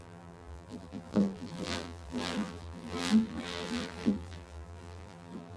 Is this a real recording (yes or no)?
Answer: no